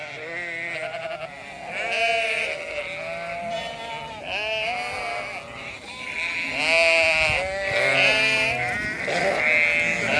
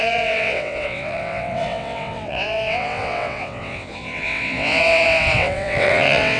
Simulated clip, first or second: second